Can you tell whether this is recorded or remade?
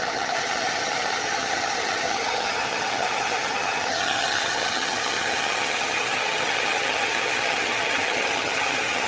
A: remade